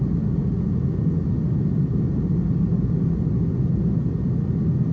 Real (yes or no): yes